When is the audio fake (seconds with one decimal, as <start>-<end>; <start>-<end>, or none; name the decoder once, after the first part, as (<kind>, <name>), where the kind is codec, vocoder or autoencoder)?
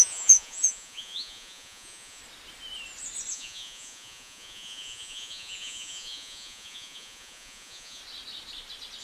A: 0.0-2.2 (vocoder, Vocos); 3.3-8.0